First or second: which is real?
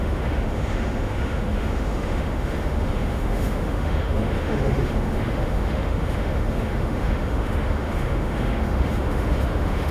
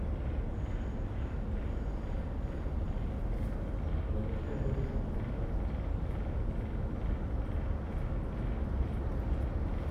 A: second